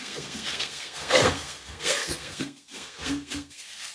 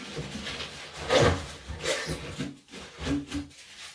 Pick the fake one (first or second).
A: first